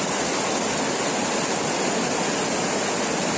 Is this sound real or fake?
real